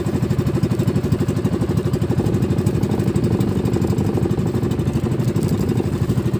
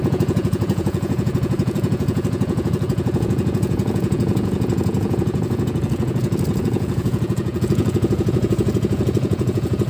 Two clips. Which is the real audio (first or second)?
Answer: first